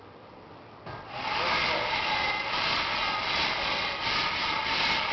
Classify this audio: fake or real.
real